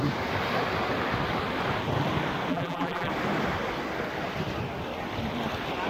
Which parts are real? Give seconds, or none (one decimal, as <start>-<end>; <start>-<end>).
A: 0.0-2.5; 3.1-5.9